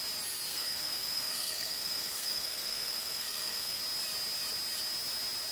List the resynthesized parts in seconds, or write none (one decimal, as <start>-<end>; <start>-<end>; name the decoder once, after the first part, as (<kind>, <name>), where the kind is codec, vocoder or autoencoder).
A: 0.5-3.8 (codec, SNAC)